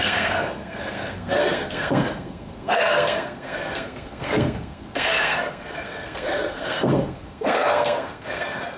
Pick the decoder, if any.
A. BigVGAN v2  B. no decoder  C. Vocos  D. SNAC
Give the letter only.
D